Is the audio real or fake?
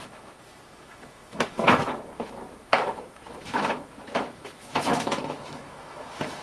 fake